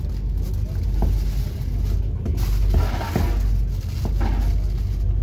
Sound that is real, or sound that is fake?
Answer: real